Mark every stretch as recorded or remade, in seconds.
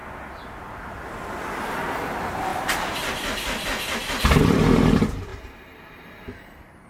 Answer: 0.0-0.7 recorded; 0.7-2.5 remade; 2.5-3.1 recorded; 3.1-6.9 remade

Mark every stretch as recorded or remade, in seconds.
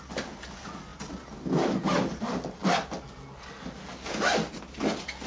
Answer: 0.0-5.3 recorded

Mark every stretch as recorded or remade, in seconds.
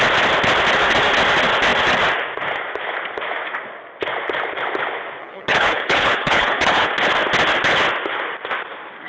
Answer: 0.0-5.2 recorded; 5.2-6.9 remade; 6.9-9.1 recorded